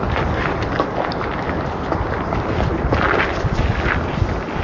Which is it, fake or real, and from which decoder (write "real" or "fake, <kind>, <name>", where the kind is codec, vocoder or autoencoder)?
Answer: real